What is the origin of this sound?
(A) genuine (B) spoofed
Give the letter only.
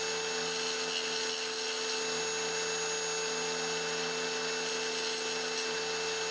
A